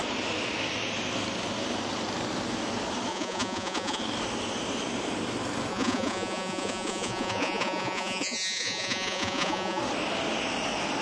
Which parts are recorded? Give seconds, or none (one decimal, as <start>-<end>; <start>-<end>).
0.0-3.1; 4.0-5.7; 9.8-11.0